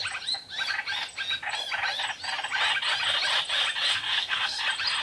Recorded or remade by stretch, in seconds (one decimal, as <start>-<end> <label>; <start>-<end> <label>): 0.0-3.9 recorded; 3.9-4.6 remade; 4.6-5.0 recorded